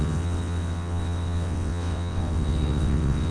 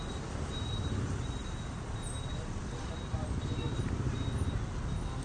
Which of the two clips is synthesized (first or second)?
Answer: first